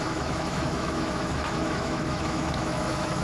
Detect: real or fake fake